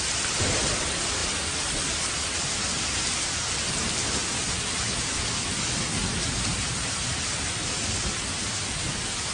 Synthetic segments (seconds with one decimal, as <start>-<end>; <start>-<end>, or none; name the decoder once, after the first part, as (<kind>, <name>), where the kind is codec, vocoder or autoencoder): none

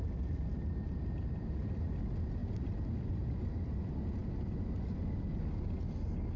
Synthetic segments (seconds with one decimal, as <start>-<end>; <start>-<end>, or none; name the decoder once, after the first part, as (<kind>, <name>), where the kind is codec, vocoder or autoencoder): 2.4-3.2 (vocoder, BigVGAN v2); 4.2-5.8

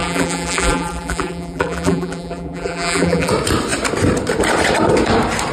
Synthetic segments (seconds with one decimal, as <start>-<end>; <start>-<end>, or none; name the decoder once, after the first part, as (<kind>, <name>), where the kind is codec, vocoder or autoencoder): 0.0-3.3 (vocoder, BigVGAN v2)

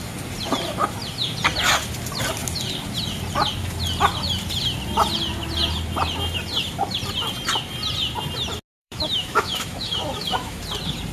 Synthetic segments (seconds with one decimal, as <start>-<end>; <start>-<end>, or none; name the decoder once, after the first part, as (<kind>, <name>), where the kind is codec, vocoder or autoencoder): 8.8-10.6 (autoencoder, DAC-VAE)

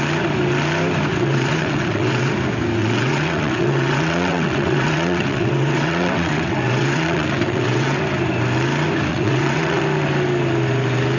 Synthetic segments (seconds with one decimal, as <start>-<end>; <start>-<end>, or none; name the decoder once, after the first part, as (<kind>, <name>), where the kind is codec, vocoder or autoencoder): 1.1-2.3 (vocoder, WaveNeXt); 2.8-8.0; 9.1-9.8